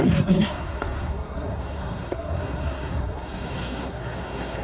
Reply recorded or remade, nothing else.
remade